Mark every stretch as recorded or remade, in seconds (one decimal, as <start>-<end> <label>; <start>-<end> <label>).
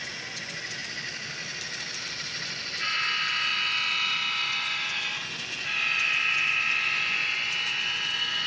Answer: 0.0-0.8 remade; 0.8-2.1 recorded; 2.1-3.5 remade; 3.5-4.1 recorded; 4.1-8.5 remade